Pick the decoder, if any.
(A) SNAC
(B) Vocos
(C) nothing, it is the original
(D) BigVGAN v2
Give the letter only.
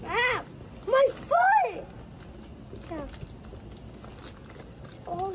C